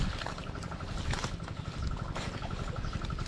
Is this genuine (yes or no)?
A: yes